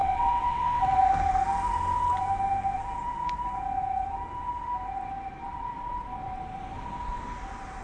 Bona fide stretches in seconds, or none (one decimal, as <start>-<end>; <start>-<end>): 0.8-7.8